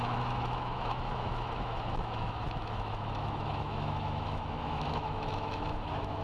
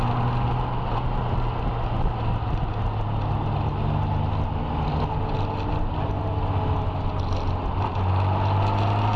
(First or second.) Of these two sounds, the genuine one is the second